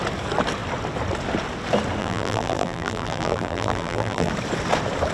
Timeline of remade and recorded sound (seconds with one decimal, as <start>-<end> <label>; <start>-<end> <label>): 0.0-2.0 recorded; 2.0-4.3 remade; 4.3-5.1 recorded